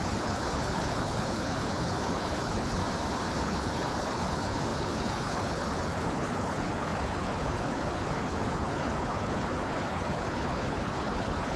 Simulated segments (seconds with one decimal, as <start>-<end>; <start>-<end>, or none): 0.0-2.8; 3.4-11.6